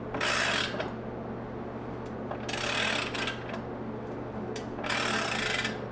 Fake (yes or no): no